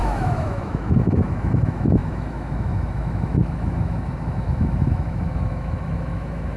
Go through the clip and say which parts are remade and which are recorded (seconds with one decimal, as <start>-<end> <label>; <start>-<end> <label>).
0.0-6.6 remade